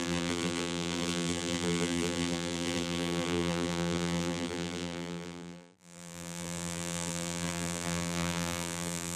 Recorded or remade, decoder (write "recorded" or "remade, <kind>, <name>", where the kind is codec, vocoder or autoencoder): remade, vocoder, BigVGAN v2